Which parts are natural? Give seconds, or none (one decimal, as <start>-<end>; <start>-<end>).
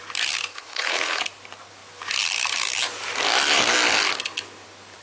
0.0-0.5; 1.2-5.0